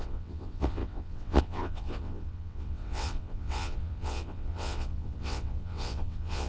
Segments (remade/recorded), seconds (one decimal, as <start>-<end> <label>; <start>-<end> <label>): 0.0-6.5 remade